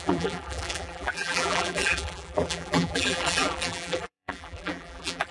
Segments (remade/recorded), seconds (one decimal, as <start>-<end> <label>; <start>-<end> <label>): 0.0-5.3 remade